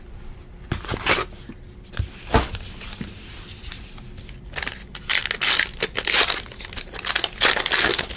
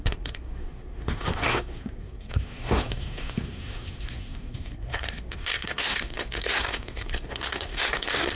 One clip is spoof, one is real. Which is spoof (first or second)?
second